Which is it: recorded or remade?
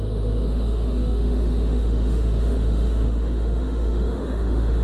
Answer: remade